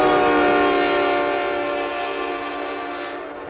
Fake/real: real